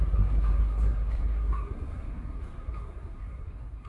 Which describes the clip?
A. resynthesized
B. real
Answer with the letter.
A